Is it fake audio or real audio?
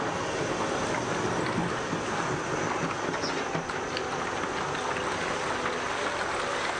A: real